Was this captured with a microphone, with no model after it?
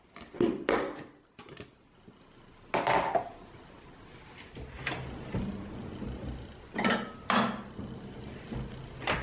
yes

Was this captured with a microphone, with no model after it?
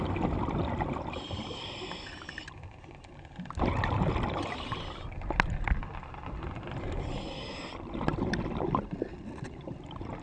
yes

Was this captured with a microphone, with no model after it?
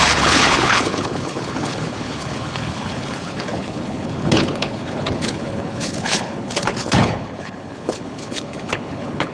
no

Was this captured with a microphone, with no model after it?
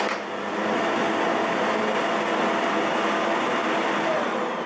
yes